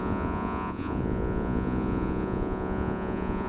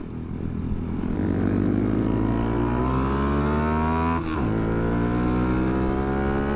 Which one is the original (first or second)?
second